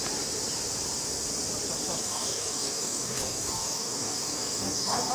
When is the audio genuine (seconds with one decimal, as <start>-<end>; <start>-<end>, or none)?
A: 0.0-2.0